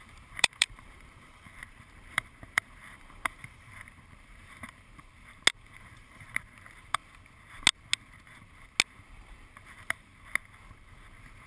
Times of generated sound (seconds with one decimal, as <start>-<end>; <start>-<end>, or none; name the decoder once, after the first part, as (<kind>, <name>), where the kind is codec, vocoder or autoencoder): 0.0-5.1 (vocoder, BigVGAN v2); 5.8-7.0; 9.5-10.1